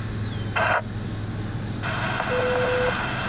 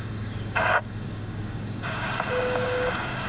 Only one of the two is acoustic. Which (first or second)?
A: first